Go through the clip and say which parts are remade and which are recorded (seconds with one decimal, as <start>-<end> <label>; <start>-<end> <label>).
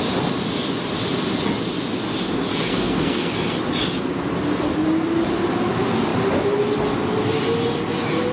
0.0-2.5 recorded; 2.5-3.6 remade; 3.6-8.3 recorded